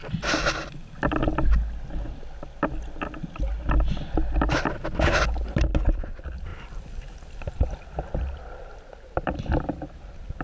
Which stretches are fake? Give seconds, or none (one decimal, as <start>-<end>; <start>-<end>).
none